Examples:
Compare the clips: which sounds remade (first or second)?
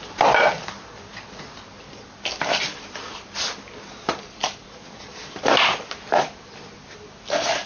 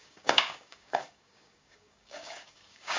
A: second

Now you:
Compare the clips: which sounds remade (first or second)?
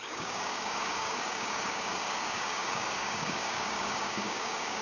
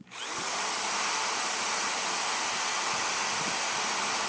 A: first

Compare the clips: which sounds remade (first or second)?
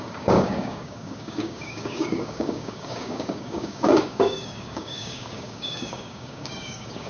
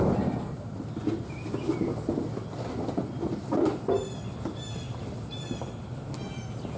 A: first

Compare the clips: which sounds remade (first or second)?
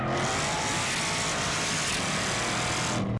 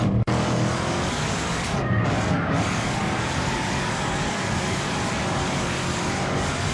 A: second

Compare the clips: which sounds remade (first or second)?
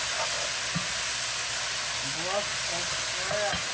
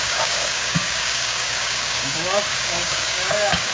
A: second